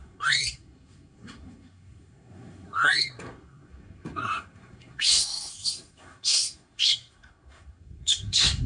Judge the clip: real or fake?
fake